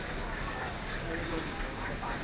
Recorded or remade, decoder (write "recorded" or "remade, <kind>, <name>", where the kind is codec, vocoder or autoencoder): remade, codec, DAC